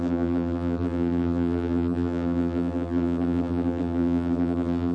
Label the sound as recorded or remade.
remade